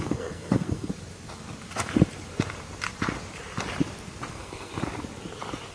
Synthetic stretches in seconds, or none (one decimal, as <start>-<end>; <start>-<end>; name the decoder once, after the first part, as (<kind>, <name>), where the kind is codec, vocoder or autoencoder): 0.0-0.9 (codec, SNAC); 4.3-4.7